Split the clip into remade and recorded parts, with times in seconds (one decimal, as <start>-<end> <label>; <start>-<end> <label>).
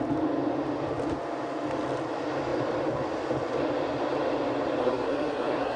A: 0.0-4.8 recorded; 4.8-5.8 remade